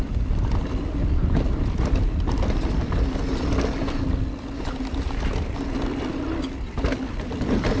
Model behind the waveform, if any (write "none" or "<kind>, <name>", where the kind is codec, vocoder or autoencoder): none